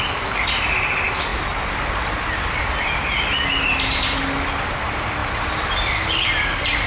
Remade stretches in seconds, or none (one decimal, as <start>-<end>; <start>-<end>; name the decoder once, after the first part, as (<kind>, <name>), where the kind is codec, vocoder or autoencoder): none